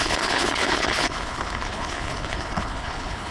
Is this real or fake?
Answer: fake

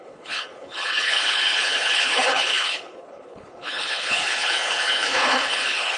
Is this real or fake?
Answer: fake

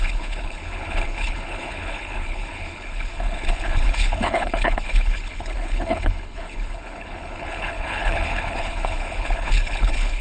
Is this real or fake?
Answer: fake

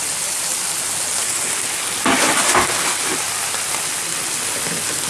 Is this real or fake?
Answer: real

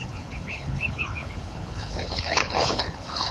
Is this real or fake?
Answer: fake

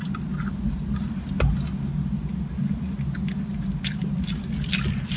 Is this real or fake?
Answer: real